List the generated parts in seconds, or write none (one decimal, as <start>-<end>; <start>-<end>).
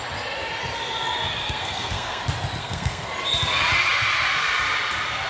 1.4-2.2; 2.6-3.1